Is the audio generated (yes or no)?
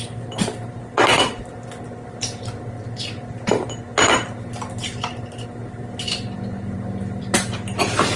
no